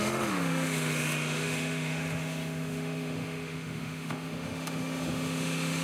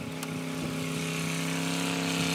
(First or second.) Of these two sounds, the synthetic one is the first